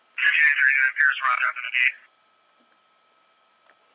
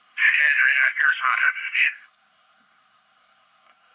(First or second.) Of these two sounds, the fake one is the second